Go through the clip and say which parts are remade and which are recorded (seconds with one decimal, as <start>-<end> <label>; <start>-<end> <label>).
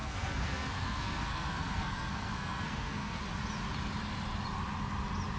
0.0-3.2 remade; 3.2-5.4 recorded